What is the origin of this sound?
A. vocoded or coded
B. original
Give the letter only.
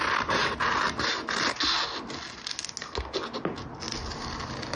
B